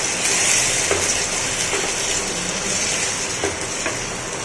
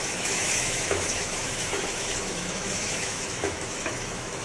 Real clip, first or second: first